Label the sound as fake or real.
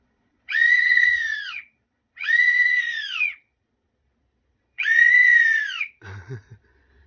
fake